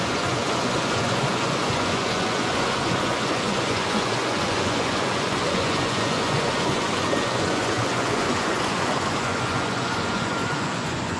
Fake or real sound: fake